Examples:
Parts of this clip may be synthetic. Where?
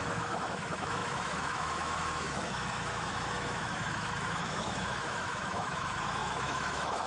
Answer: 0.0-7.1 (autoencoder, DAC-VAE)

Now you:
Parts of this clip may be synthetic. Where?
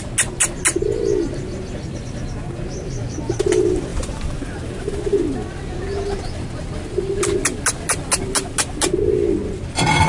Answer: 3.9-5.0 (vocoder, BigVGAN v2)